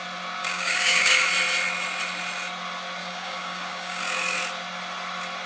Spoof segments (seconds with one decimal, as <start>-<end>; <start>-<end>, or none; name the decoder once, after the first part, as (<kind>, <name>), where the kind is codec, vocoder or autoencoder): 0.4-1.3 (codec, DAC); 3.0-4.0